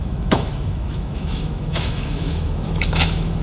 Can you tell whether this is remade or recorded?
remade